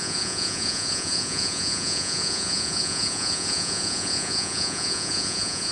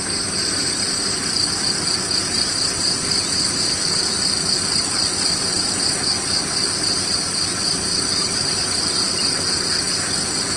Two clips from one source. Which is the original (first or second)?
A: second